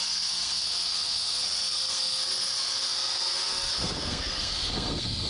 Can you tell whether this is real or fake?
fake